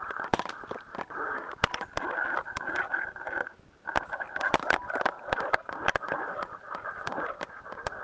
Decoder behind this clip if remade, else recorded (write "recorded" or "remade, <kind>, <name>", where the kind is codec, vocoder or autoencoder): recorded